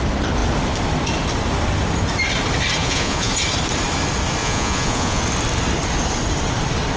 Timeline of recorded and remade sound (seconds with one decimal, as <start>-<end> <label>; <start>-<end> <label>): 0.0-2.8 recorded; 2.8-3.3 remade; 3.3-4.4 recorded; 4.4-5.2 remade; 5.2-7.0 recorded